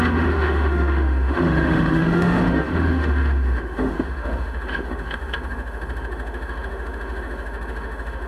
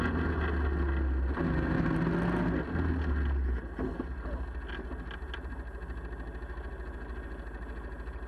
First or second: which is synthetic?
first